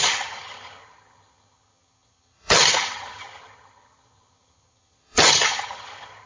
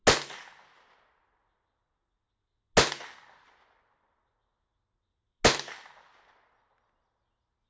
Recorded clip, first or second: second